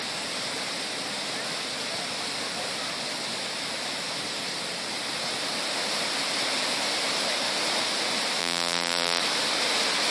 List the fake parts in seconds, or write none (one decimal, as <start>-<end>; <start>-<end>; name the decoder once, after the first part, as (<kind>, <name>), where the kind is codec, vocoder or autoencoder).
8.4-9.2 (vocoder, BigVGAN v2)